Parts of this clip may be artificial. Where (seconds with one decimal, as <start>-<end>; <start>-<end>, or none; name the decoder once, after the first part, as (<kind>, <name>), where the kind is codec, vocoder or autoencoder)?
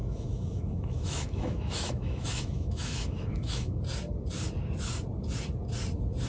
0.0-3.8 (autoencoder, DAC-VAE)